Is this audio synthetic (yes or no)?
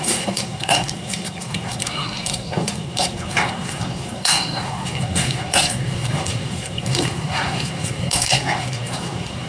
yes